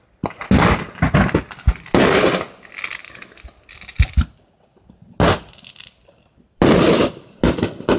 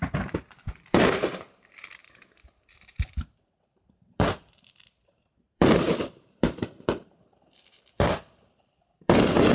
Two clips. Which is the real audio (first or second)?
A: first